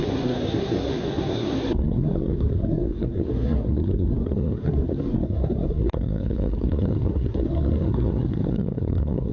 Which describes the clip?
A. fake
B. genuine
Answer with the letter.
A